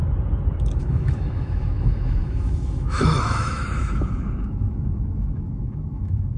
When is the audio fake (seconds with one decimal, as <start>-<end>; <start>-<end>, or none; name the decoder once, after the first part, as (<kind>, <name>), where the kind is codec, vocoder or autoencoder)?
0.8-6.4 (autoencoder, DAC-VAE)